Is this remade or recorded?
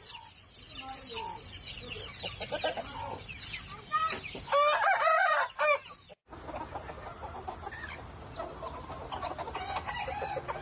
recorded